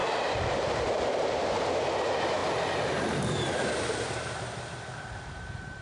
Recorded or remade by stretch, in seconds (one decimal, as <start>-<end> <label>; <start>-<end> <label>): 0.0-1.4 remade; 1.4-2.4 recorded; 2.4-5.8 remade